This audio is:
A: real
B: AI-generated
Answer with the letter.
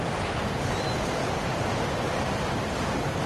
A